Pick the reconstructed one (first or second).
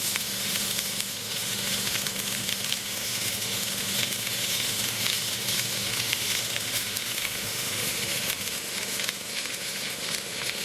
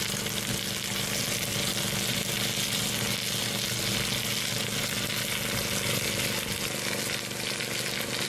first